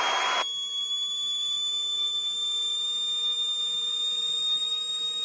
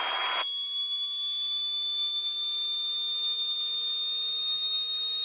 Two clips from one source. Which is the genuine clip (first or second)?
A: second